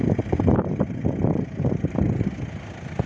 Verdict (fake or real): real